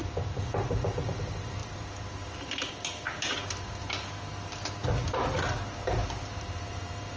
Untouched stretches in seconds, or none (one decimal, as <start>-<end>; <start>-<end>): 0.0-1.6; 2.2-4.8; 6.8-7.2

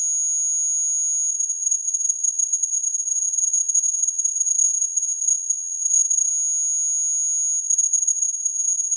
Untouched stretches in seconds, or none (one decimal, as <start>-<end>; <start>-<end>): 0.0-1.3; 6.3-7.6